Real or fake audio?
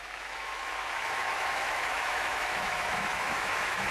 fake